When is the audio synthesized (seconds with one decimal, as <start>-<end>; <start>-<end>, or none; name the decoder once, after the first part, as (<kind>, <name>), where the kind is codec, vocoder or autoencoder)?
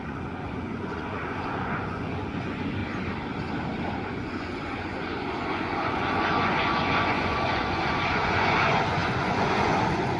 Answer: 0.0-2.8 (vocoder, Vocos); 4.0-10.2